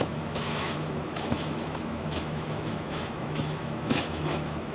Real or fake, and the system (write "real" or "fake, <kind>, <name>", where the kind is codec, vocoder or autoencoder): fake, autoencoder, DAC-VAE